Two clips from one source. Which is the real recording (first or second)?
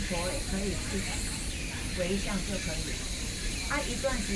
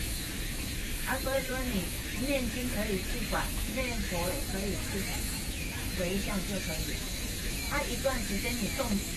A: first